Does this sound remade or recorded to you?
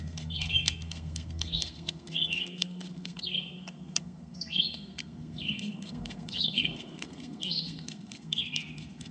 remade